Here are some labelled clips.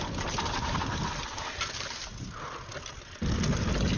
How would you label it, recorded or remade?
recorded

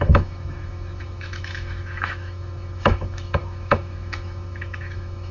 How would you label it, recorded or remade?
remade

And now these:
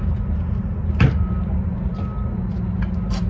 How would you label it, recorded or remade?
recorded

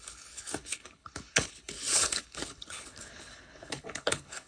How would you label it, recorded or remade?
remade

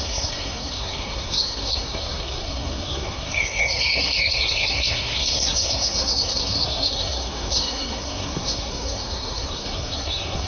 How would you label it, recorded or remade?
remade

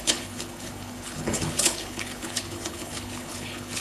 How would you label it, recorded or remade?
remade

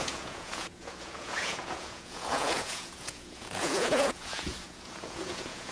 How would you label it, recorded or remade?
remade